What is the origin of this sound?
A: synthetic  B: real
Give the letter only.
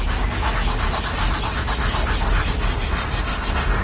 B